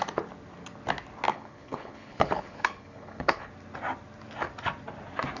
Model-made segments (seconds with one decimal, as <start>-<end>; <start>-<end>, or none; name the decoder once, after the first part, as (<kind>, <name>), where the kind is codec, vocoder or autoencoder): 1.3-3.5 (codec, HILCodec)